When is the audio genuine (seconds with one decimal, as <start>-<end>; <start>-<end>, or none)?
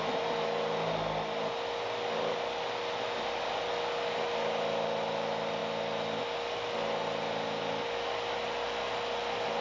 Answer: 0.0-9.6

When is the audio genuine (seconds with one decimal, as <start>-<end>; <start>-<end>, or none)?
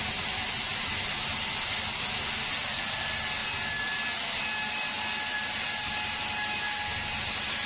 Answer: 0.0-7.7